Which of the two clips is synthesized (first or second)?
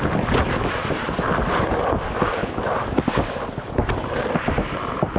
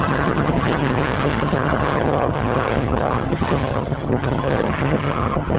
second